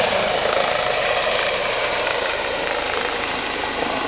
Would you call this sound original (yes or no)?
no